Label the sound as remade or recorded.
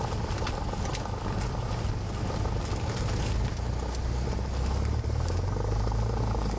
recorded